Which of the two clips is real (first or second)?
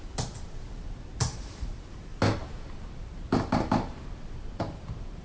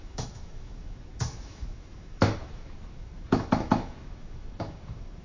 first